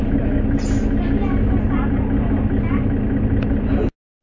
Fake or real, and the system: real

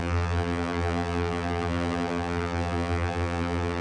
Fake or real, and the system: fake, vocoder, BigVGAN v2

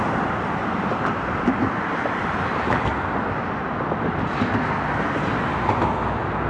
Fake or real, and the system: real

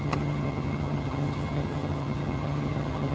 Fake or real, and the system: fake, vocoder, HiFi-GAN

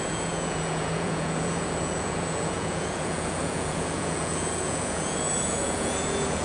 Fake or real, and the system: fake, vocoder, Vocos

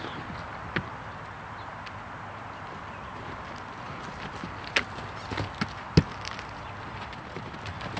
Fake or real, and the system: real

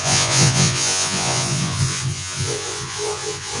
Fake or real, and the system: fake, vocoder, Vocos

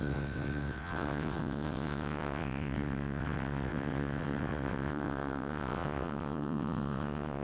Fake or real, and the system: fake, vocoder, WaveNeXt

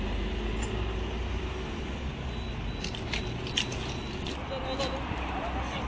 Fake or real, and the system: real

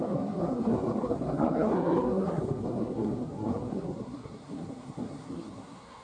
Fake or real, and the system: fake, codec, SNAC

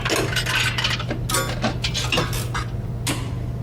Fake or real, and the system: real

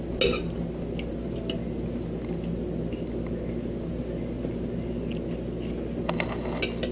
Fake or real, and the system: real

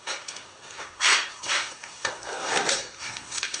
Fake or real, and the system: fake, codec, SNAC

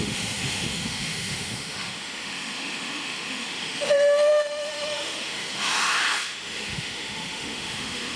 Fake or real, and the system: fake, autoencoder, DAC-VAE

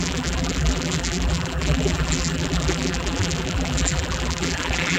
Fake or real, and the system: fake, vocoder, BigVGAN v2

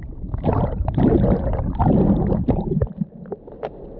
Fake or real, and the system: real